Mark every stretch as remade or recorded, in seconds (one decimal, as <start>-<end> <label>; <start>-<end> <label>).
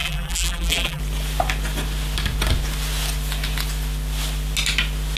0.0-1.0 remade; 1.0-5.2 recorded